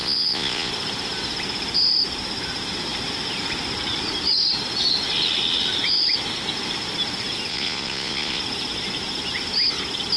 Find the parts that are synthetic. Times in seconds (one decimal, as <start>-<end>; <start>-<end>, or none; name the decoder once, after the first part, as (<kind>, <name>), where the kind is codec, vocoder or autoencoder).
0.0-0.7 (vocoder, Vocos); 7.5-8.4